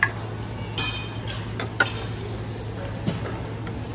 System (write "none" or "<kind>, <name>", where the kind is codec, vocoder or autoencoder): none